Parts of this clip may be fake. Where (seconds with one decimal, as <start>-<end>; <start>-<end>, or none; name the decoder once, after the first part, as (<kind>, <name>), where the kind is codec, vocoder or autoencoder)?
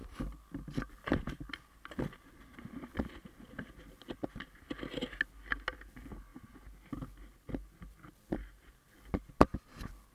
none